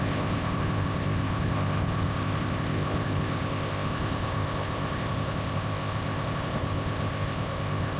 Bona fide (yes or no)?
no